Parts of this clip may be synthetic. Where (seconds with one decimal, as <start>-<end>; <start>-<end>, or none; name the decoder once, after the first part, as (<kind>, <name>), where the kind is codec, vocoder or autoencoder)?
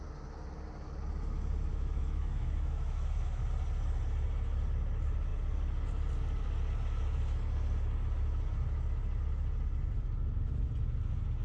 1.7-3.4 (autoencoder, DAC-VAE)